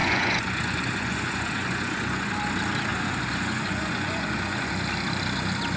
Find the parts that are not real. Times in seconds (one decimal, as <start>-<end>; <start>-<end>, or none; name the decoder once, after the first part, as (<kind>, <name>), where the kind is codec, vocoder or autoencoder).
0.0-2.3 (vocoder, Vocos); 2.9-4.7

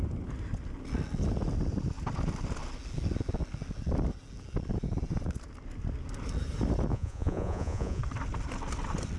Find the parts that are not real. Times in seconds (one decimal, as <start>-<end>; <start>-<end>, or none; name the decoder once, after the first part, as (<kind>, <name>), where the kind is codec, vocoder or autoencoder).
6.9-8.0 (vocoder, Vocos)

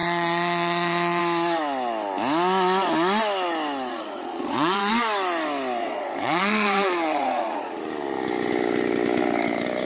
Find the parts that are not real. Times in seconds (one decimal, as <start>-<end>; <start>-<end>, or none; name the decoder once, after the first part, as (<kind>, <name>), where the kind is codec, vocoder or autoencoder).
0.0-1.2 (vocoder, Vocos); 3.9-4.9; 5.8-7.7

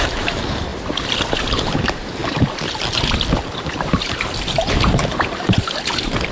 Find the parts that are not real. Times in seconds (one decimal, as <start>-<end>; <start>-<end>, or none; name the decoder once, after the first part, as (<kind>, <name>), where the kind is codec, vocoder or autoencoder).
0.0-0.7 (vocoder, BigVGAN v2); 1.3-2.2; 3.3-6.3

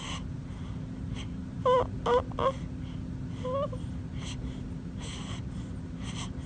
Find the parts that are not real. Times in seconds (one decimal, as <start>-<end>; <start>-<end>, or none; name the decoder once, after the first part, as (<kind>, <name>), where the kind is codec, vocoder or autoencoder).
none

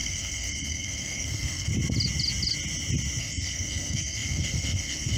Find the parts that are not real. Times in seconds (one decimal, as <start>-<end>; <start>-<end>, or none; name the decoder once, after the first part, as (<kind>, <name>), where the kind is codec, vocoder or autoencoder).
0.0-1.7 (codec, SNAC); 3.2-5.2

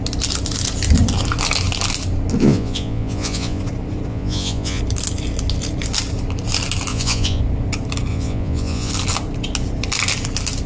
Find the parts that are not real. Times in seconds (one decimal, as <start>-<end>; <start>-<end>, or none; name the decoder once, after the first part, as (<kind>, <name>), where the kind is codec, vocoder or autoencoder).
2.4-3.6 (vocoder, Vocos); 4.1-4.8; 6.9-7.4; 8.1-8.9